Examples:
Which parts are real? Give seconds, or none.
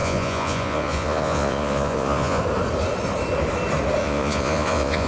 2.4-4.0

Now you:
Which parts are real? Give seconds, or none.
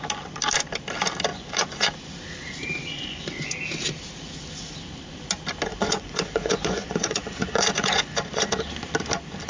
0.0-1.3; 1.9-2.8; 3.5-5.7; 8.5-9.5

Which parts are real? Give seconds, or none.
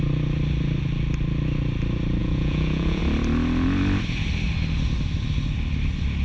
0.0-2.2; 3.0-6.2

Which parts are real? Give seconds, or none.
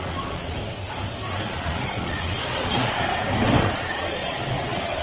0.6-1.3; 3.1-3.6